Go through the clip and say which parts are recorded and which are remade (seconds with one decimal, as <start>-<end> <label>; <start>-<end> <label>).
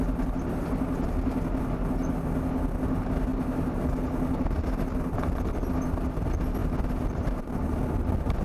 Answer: 0.0-8.4 recorded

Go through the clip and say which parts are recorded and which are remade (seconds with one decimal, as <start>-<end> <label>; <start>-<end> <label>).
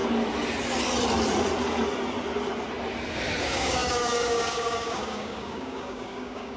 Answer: 0.0-3.4 recorded; 3.4-6.6 remade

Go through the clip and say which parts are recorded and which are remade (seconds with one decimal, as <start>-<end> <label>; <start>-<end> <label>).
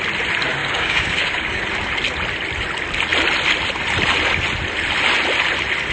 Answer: 0.0-0.6 recorded; 0.6-1.6 remade; 1.6-5.9 recorded